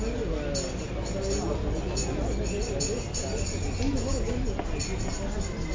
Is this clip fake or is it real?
real